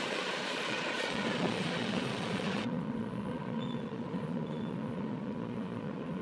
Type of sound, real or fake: fake